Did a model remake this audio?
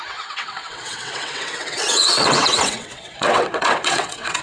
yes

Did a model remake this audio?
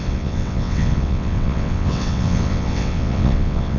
yes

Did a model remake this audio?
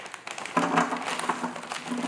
no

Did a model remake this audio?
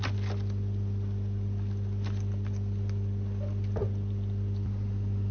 no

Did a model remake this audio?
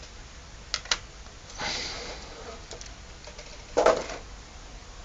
no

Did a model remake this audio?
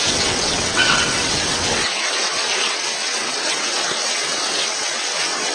yes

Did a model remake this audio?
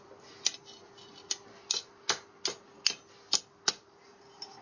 no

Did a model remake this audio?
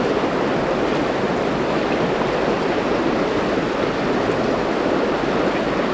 no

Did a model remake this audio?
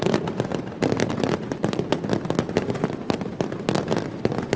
no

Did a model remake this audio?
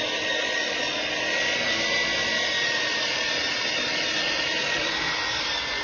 no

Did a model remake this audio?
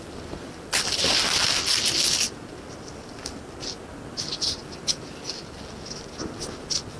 no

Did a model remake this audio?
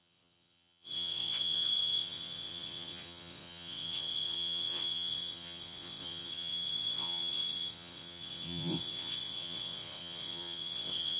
yes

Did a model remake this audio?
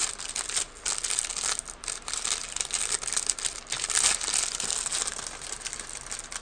no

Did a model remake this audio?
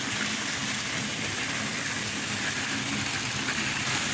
no